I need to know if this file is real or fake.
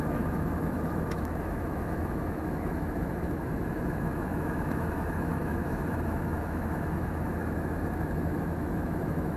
fake